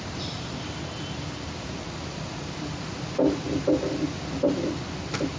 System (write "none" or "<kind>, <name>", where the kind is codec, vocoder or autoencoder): none